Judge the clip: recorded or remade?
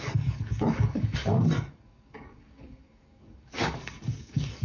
remade